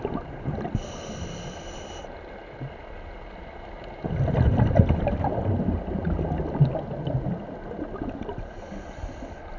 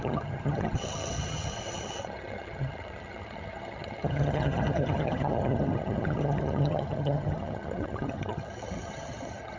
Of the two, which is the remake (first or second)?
second